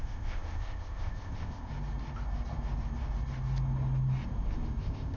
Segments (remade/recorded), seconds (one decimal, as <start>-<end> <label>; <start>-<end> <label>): 0.0-1.7 remade; 1.7-4.8 recorded; 4.8-5.2 remade